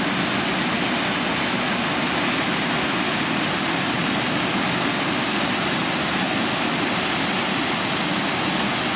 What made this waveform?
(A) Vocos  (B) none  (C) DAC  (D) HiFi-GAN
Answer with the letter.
B